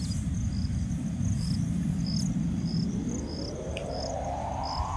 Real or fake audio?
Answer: fake